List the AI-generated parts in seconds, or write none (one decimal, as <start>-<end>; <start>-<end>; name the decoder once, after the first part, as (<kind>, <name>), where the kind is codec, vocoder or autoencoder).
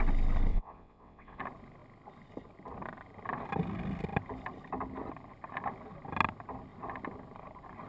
0.5-1.4 (vocoder, WaveNeXt)